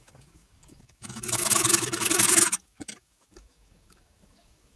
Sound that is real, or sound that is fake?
fake